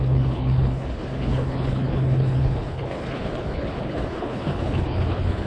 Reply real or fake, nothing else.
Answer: fake